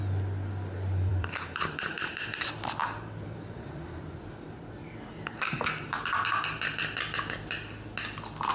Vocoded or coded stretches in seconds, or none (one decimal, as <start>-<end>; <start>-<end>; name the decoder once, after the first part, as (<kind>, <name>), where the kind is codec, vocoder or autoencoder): 1.1-5.9 (vocoder, BigVGAN v2)